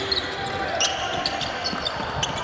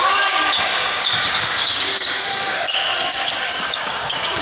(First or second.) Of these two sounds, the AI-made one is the second